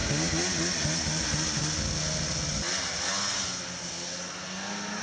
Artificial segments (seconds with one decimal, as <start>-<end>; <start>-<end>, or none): none